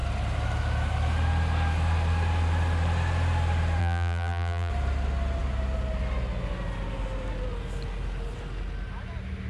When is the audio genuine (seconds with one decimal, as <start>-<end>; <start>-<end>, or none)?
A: 0.0-3.8; 4.7-9.5